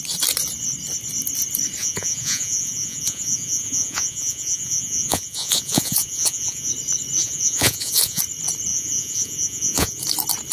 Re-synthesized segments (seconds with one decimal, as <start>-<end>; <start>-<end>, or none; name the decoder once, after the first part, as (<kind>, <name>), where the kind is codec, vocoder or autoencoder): 1.8-6.7 (vocoder, Vocos); 7.2-8.2; 8.7-10.0